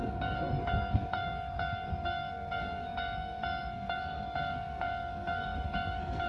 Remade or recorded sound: remade